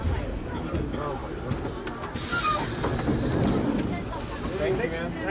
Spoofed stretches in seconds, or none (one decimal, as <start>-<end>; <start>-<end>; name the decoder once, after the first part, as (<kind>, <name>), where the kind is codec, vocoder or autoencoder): none